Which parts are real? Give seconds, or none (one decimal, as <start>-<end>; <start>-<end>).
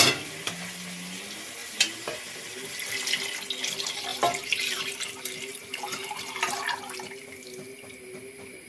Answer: 0.0-1.6; 2.2-4.1; 4.8-5.5; 6.5-8.7